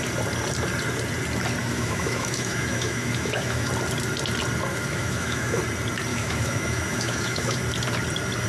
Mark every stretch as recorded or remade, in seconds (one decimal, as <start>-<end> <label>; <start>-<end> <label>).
0.0-1.6 recorded; 1.6-3.7 remade; 3.7-4.7 recorded; 4.7-5.6 remade; 5.6-6.1 recorded; 6.1-7.6 remade; 7.6-8.5 recorded